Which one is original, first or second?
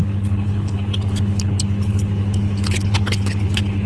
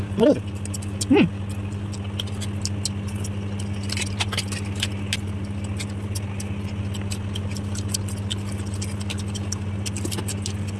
second